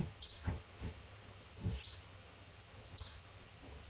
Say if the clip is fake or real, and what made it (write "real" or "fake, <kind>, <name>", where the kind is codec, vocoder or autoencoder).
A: fake, vocoder, HiFi-GAN